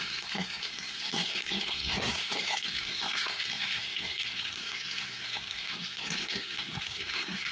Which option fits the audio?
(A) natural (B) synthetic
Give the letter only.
B